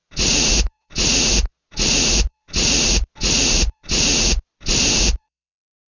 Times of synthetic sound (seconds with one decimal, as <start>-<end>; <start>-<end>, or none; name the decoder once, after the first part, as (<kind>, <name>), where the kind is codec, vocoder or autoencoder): 0.0-4.5 (vocoder, Vocos); 5.0-5.9